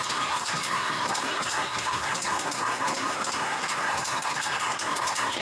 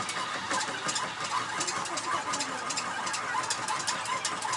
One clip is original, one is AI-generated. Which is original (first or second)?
second